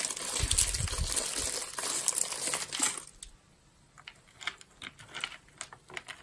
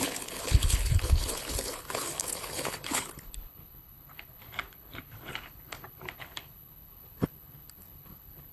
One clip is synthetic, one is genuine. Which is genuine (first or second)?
first